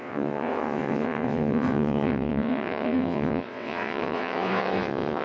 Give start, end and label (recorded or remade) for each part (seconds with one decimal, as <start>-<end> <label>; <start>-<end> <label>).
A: 0.0-5.2 remade